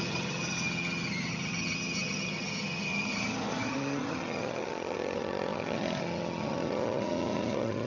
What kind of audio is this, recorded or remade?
remade